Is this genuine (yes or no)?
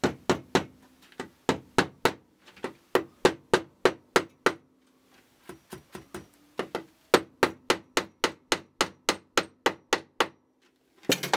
yes